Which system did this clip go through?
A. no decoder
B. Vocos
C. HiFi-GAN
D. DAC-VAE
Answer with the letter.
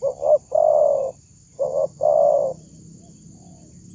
A